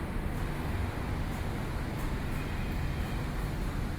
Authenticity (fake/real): real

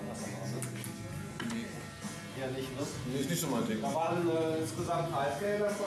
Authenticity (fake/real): real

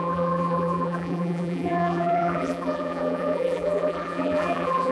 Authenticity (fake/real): fake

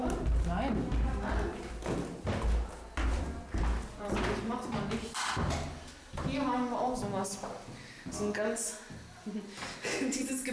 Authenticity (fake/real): real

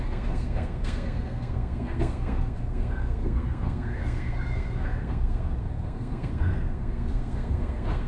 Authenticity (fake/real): fake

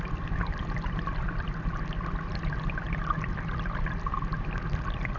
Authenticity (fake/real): real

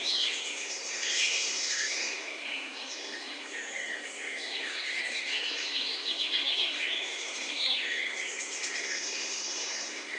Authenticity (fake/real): fake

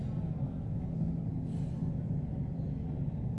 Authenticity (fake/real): real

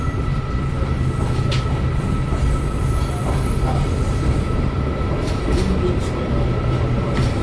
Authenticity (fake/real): real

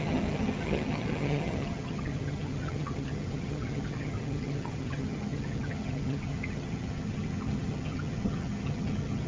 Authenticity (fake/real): fake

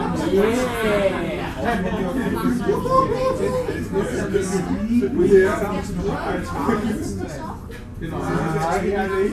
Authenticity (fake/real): real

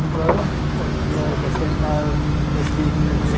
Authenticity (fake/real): real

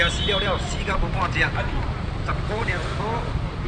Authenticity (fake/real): fake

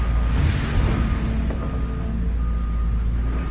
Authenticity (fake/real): real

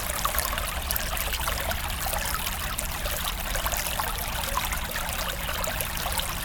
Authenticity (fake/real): fake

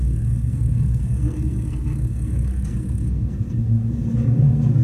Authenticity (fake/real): fake